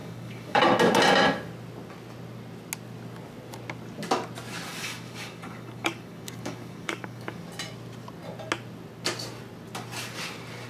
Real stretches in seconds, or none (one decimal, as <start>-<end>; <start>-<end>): 0.6-4.7; 7.4-10.7